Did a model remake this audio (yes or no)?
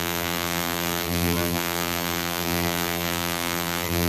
yes